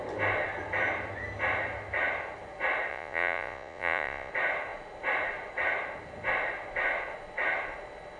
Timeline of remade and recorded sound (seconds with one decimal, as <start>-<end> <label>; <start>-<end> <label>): 0.0-2.9 recorded; 2.9-4.3 remade; 4.3-8.2 recorded